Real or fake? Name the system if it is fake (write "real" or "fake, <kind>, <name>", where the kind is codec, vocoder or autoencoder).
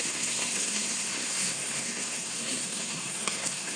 fake, codec, SNAC